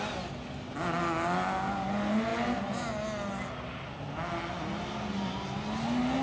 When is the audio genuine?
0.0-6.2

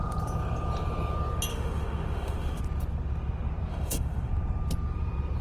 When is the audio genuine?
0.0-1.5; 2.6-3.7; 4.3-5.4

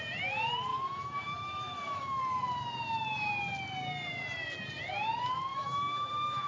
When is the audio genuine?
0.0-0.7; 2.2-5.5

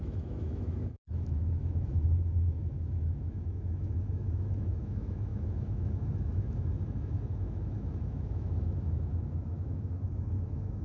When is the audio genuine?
none

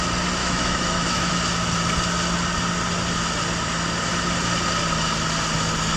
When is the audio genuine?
0.0-0.4; 1.3-6.0